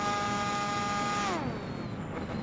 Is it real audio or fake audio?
real